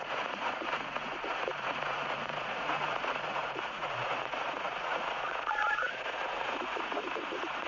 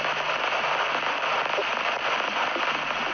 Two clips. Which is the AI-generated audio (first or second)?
first